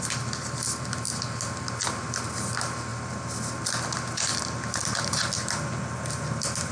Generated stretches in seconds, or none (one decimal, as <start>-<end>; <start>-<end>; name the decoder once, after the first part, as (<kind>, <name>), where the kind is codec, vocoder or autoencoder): none